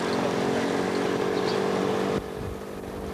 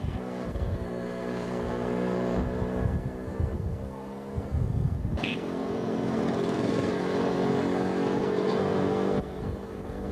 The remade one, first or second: second